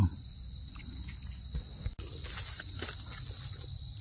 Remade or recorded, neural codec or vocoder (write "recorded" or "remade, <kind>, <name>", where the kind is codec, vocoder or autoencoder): recorded